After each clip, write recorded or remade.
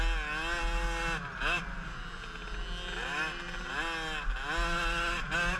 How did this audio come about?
recorded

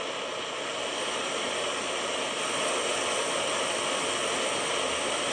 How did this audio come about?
recorded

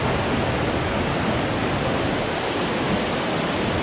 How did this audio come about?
recorded